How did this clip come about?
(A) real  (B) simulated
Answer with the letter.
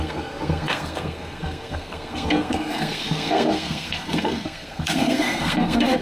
B